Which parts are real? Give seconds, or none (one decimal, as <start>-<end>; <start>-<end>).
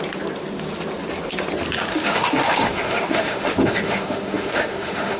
0.0-1.9